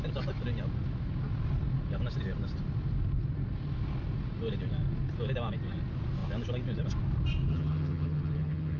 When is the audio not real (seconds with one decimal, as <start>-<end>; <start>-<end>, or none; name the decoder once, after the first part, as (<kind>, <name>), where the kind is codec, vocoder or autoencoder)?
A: 7.5-8.8 (vocoder, HiFi-GAN)